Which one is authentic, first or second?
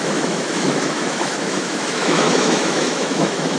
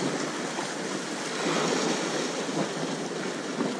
second